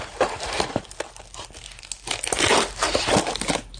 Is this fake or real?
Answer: real